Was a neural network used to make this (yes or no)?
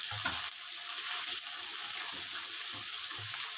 no